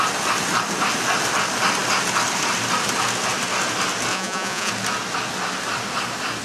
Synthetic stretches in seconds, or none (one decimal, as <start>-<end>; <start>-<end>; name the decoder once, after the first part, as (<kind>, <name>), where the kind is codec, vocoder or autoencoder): 4.1-4.7 (vocoder, Vocos)